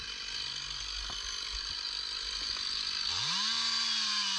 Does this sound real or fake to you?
real